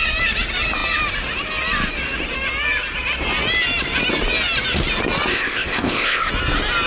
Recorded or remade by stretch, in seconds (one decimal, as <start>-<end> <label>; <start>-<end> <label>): 0.0-5.3 recorded; 5.3-6.3 remade; 6.3-6.9 recorded